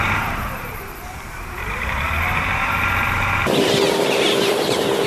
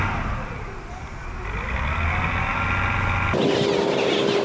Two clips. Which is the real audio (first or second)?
second